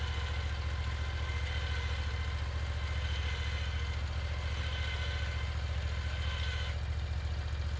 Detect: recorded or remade recorded